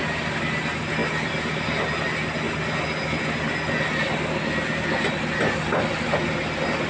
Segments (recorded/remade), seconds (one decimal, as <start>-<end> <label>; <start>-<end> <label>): 0.0-6.9 recorded